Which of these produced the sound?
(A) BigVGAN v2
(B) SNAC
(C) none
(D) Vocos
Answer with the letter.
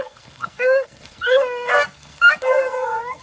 B